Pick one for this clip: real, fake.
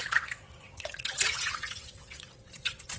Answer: fake